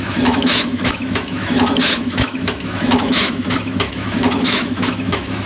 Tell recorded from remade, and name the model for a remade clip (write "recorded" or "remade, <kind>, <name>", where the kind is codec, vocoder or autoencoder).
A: remade, autoencoder, DAC-VAE